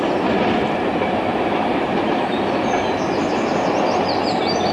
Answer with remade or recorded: recorded